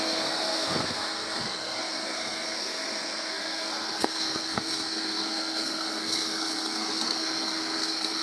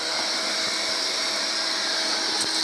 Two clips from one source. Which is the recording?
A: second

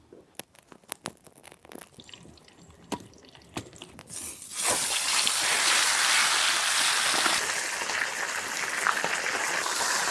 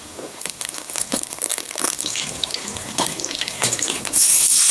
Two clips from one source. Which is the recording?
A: first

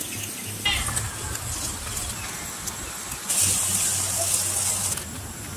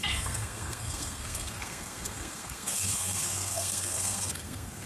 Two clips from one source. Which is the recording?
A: first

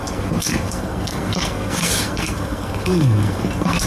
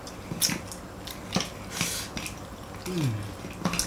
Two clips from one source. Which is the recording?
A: second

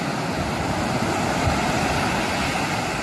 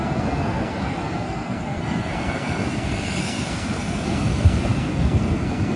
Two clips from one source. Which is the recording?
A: first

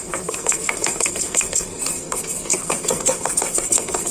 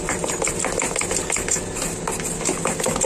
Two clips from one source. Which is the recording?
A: second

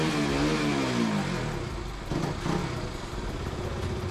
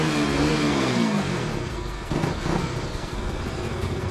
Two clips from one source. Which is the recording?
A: first